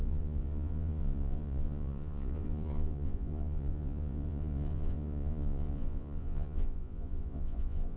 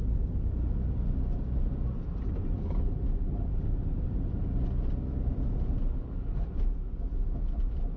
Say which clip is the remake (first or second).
first